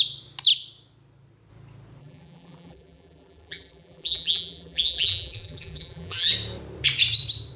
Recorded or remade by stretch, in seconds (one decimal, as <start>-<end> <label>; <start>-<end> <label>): 0.0-2.0 recorded; 2.0-6.3 remade; 6.3-7.6 recorded